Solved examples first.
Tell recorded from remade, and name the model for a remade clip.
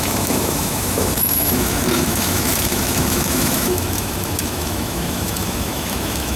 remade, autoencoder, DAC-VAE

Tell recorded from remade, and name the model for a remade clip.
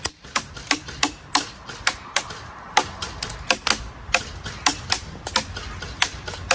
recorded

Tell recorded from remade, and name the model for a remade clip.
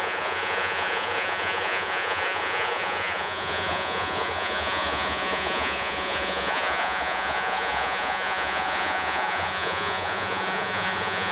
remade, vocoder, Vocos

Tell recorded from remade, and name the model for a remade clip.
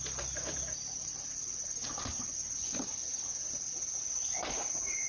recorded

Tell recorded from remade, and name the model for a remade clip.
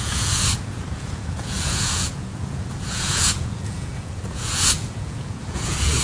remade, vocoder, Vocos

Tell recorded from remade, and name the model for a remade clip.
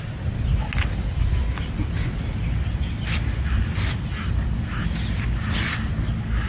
recorded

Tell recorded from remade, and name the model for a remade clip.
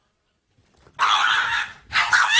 recorded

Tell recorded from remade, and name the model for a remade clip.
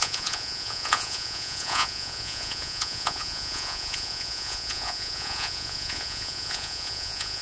remade, vocoder, Vocos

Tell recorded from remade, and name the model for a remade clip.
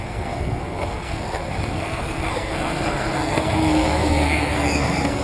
remade, codec, SNAC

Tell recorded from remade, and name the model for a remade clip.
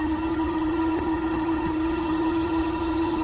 remade, vocoder, HiFi-GAN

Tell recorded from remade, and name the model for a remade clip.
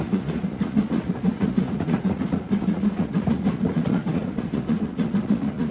remade, vocoder, Vocos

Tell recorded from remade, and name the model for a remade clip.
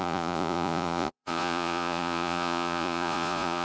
remade, vocoder, Vocos